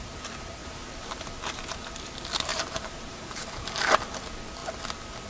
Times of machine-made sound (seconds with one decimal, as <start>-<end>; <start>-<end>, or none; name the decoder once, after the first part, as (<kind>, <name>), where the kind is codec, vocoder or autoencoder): 0.6-1.1 (vocoder, BigVGAN v2); 2.5-3.6